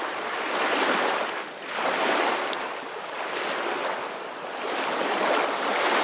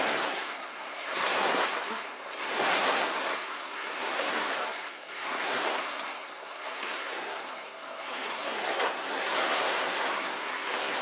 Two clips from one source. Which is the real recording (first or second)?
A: first